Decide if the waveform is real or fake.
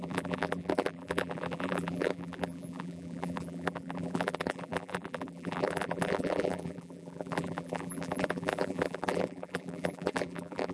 fake